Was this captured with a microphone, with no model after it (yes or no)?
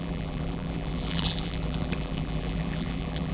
no